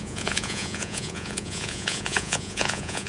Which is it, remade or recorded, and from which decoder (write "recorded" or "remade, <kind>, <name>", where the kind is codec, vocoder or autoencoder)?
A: remade, vocoder, Vocos